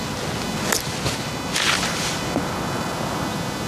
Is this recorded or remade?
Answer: recorded